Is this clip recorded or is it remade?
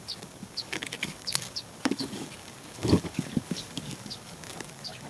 remade